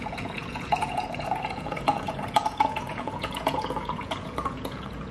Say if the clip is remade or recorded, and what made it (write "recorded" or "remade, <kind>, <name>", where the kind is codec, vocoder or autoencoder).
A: remade, vocoder, Vocos